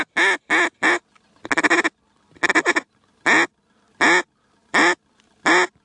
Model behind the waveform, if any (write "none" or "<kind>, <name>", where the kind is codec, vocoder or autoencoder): none